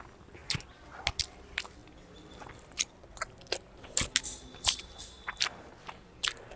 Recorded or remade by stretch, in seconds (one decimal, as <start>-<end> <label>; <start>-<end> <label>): 0.0-6.6 recorded